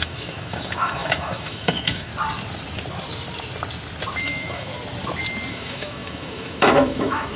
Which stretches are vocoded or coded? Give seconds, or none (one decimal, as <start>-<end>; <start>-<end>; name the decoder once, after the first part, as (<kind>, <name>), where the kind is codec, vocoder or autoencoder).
0.0-2.1 (autoencoder, DAC-VAE); 4.2-4.7; 5.5-7.4